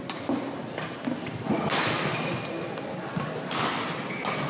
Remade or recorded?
recorded